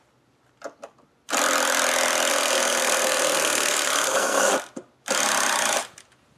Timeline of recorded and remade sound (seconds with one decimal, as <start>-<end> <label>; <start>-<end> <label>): 0.0-2.3 recorded; 2.3-4.5 remade; 4.5-6.4 recorded